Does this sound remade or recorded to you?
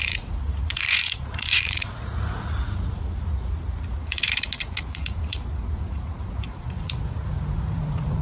remade